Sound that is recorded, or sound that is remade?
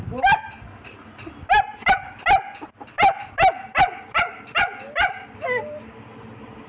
recorded